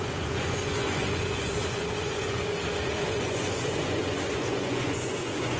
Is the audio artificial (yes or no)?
yes